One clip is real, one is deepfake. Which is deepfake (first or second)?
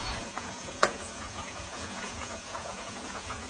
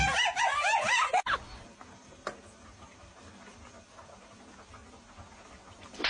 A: first